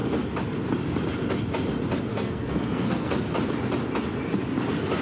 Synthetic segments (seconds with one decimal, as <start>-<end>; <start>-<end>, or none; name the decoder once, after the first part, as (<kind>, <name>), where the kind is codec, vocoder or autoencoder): 2.1-3.1 (codec, SNAC)